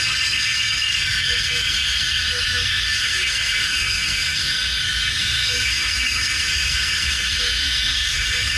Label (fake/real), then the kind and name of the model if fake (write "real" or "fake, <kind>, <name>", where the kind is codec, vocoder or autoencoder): fake, codec, SNAC